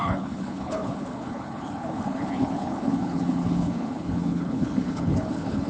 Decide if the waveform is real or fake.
fake